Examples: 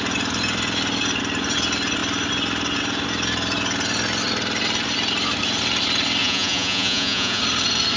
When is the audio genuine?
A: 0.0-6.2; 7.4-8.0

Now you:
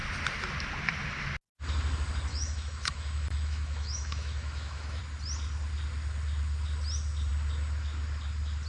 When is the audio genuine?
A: 0.0-2.3; 5.0-8.7

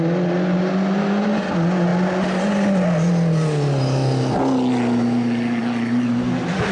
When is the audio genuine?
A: 0.0-6.7

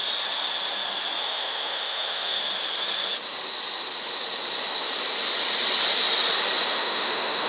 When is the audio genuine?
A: 0.0-1.2; 2.4-6.7

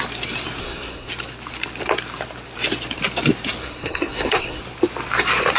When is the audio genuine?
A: 0.0-0.6; 1.1-3.6; 4.6-5.6

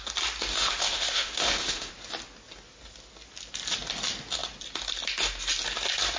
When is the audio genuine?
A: 0.0-0.5; 1.9-6.2

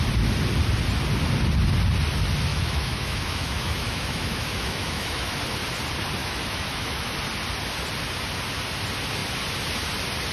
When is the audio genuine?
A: 0.0-2.5; 5.3-6.2; 7.1-10.3

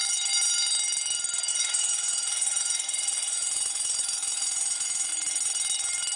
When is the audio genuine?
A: 0.0-1.5; 5.1-6.2